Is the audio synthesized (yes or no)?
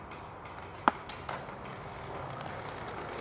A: no